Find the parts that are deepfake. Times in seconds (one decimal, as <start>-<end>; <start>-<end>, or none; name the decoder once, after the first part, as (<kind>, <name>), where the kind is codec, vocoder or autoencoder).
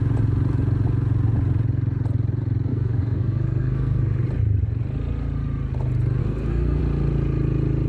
2.7-4.2 (codec, SNAC); 6.2-6.8